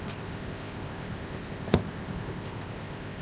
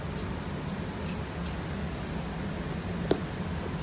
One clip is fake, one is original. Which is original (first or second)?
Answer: second